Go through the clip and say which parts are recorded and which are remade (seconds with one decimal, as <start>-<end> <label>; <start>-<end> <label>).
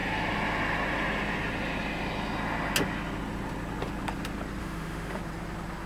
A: 0.0-4.6 recorded; 4.6-5.2 remade; 5.2-5.9 recorded